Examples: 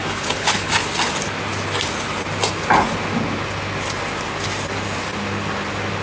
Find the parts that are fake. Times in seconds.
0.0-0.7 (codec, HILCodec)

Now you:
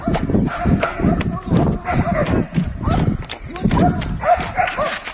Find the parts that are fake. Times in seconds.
0.9-4.0 (vocoder, BigVGAN v2)

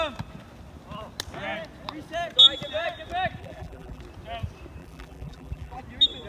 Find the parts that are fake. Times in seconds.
3.4-4.0 (vocoder, BigVGAN v2); 4.8-5.8